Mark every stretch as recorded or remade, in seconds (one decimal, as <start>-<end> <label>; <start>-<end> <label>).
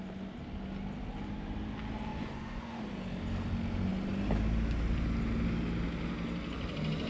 0.0-2.1 recorded; 2.1-2.8 remade; 2.8-7.1 recorded